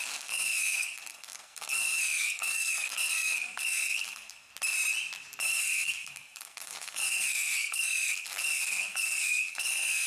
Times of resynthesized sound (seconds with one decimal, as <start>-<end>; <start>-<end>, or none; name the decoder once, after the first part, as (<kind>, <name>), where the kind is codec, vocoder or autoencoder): 0.0-4.5 (codec, SNAC); 5.4-10.1